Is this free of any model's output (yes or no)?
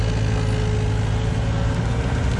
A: yes